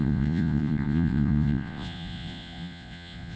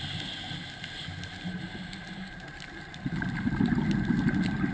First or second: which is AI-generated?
first